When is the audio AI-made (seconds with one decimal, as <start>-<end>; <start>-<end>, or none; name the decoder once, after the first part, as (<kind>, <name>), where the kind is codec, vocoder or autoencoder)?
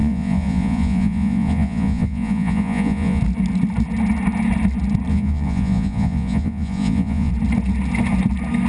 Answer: 0.0-3.2 (vocoder, Vocos); 5.1-7.3